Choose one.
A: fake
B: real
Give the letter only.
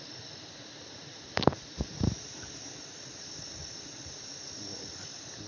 B